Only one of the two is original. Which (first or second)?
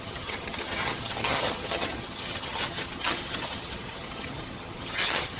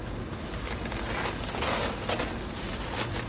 second